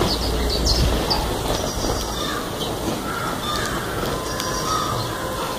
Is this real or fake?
real